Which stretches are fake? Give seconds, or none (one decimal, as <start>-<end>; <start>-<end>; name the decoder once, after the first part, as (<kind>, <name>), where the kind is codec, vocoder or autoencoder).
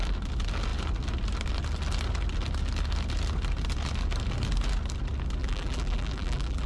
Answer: 5.4-6.7 (vocoder, BigVGAN v2)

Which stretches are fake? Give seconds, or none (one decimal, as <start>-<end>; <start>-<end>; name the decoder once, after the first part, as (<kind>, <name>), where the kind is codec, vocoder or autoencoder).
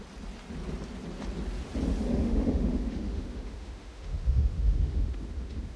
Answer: 2.1-5.8 (autoencoder, DAC-VAE)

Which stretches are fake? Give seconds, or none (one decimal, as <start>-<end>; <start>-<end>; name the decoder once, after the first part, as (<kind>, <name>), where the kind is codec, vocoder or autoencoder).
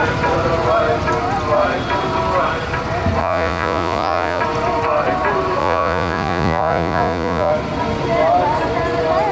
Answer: 3.2-4.4 (vocoder, Vocos); 5.6-7.5